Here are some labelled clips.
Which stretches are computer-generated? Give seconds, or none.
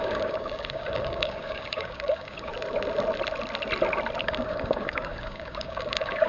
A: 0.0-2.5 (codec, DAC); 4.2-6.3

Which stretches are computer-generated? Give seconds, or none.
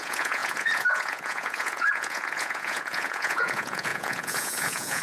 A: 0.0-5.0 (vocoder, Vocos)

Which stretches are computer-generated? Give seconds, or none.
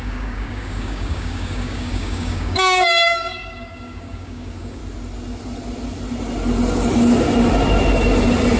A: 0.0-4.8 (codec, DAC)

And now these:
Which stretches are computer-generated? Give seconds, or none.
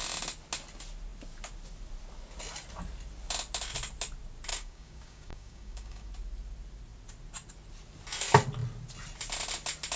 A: 4.5-6.1 (codec, DAC)